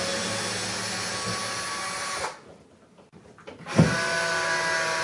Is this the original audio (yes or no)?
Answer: yes